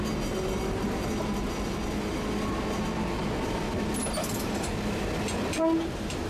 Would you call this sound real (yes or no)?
yes